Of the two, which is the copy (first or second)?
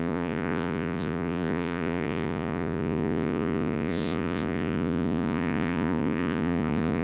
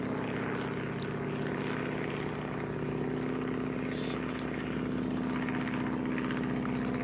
first